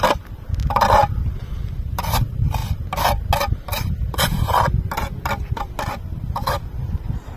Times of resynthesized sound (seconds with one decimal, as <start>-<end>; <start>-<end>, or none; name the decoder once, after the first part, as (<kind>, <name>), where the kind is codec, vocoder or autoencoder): none